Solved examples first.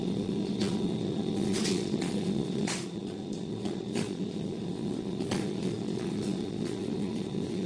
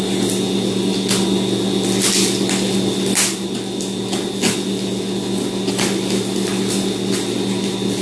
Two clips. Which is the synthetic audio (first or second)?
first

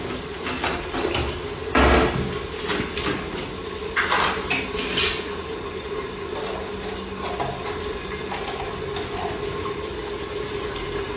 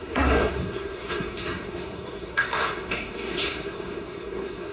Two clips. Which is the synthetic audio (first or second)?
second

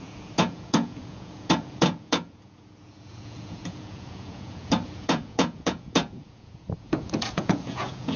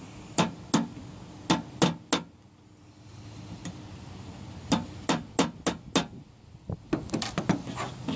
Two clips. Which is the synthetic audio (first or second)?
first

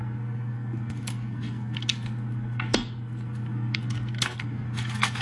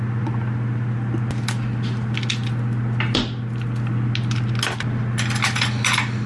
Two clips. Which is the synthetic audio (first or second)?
first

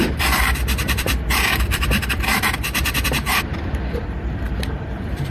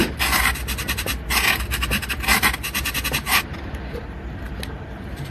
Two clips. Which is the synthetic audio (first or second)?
first